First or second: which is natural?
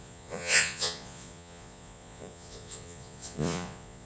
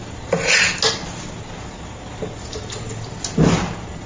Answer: second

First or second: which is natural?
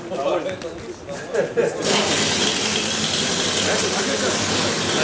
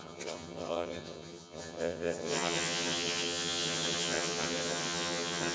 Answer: first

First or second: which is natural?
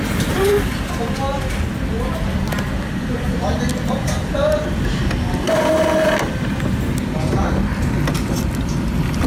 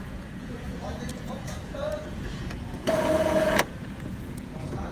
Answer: first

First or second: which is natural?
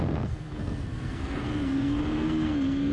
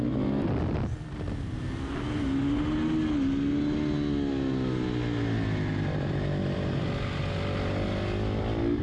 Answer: second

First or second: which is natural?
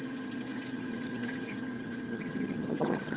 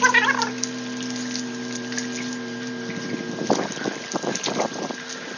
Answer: second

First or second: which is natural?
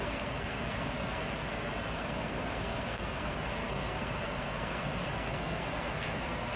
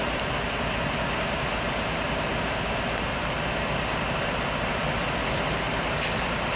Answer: second